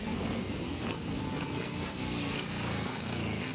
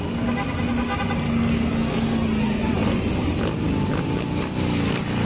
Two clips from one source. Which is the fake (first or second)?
first